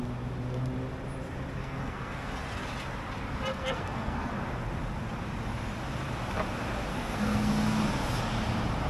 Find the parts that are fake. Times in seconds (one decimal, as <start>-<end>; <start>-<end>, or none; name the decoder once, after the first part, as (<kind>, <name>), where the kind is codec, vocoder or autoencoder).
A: 1.6-2.3 (codec, SNAC); 3.5-4.3; 6.9-7.5